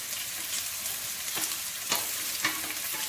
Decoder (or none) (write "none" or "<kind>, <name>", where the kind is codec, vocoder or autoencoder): none